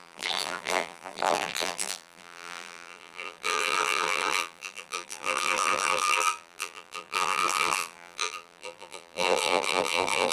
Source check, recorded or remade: remade